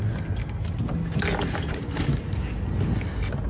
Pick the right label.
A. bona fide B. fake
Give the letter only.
A